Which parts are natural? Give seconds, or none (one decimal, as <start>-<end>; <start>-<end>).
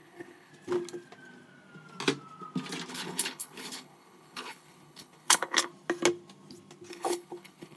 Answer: 0.5-2.9; 5.7-6.9